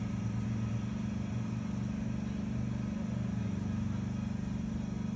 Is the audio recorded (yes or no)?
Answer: yes